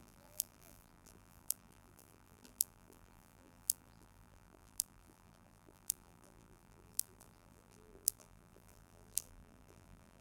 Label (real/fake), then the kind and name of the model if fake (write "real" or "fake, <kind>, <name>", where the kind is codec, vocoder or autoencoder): fake, vocoder, BigVGAN v2